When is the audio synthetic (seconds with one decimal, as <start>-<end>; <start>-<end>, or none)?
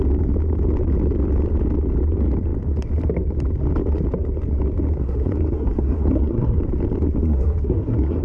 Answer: 5.0-6.6; 7.2-8.2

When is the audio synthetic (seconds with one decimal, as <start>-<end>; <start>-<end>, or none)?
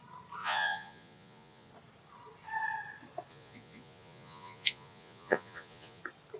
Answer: 0.4-1.7; 3.3-6.0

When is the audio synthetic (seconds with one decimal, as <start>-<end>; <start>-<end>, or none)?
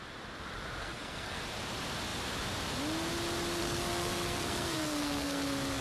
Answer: 0.8-1.4; 3.6-5.8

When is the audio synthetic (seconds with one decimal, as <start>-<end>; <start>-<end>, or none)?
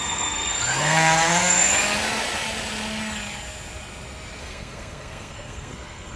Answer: 0.0-1.7; 4.4-6.2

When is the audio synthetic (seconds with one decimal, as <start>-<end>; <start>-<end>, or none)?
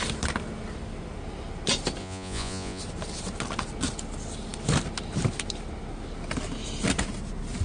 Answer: 2.0-2.8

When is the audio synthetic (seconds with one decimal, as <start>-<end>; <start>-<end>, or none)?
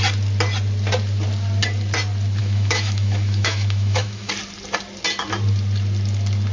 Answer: 2.4-4.3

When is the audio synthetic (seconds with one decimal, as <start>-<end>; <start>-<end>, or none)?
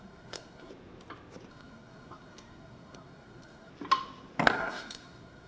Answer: 0.0-0.7; 1.5-3.7; 4.5-5.5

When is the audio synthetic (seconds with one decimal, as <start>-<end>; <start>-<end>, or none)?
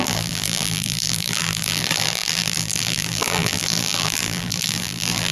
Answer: 0.0-5.3